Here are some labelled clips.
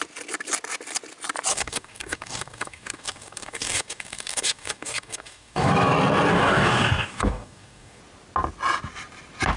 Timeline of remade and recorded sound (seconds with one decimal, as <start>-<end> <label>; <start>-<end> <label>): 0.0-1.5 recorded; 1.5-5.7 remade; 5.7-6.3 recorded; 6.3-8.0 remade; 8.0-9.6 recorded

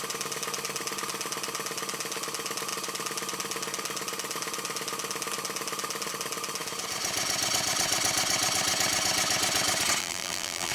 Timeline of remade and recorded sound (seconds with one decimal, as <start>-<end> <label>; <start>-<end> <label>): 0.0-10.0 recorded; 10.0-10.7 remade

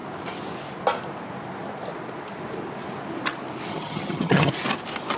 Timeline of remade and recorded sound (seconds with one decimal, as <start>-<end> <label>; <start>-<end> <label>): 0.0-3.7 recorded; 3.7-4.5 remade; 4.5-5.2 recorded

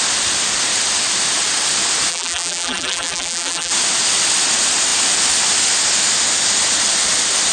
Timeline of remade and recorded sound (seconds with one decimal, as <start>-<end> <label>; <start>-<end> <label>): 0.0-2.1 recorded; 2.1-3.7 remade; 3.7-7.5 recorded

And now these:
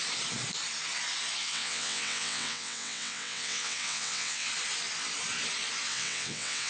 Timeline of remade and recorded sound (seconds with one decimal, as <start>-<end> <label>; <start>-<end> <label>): 0.0-1.4 recorded; 1.4-4.5 remade; 4.5-5.9 recorded; 5.9-6.7 remade